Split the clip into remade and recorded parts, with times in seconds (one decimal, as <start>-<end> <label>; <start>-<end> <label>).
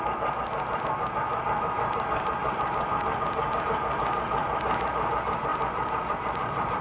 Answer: 0.0-2.4 recorded; 2.4-3.2 remade; 3.2-4.4 recorded; 4.4-5.1 remade; 5.1-5.5 recorded; 5.5-6.8 remade